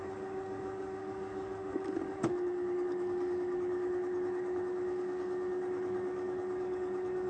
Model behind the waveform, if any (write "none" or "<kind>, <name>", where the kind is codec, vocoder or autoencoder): codec, DAC